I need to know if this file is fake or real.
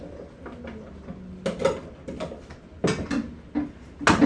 real